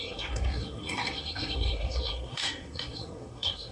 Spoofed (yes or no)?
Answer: yes